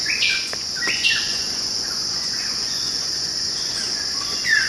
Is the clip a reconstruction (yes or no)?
yes